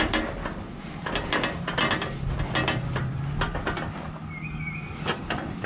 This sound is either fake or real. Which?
real